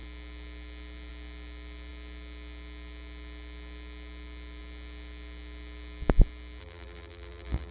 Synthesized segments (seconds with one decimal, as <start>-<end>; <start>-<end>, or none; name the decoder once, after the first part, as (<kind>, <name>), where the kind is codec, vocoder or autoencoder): 6.6-7.7 (vocoder, BigVGAN v2)